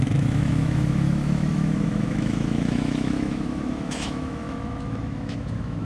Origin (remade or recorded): remade